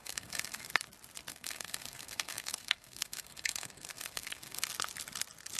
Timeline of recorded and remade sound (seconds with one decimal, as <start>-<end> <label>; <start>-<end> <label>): 0.0-0.7 remade; 0.7-1.3 recorded; 1.3-4.7 remade; 4.7-5.6 recorded